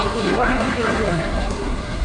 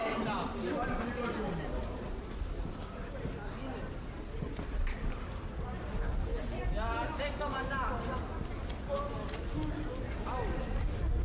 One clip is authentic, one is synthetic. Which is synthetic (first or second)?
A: first